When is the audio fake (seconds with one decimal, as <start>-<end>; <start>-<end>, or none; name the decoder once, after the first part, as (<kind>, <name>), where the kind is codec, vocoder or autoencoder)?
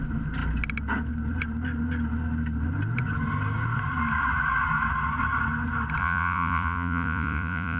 6.0-7.8 (vocoder, Vocos)